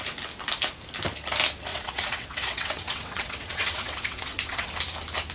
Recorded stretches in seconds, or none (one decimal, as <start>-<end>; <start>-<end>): 0.0-1.7; 4.7-5.3

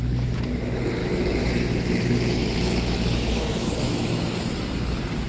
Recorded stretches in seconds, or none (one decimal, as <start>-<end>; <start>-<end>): 0.0-1.0; 4.2-5.3

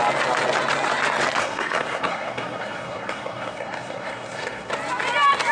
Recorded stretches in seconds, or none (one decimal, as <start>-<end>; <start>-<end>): 0.0-1.4; 4.7-5.5

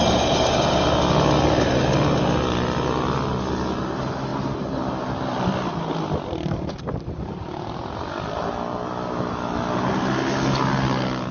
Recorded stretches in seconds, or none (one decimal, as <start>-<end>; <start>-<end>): 0.0-4.3; 5.9-11.3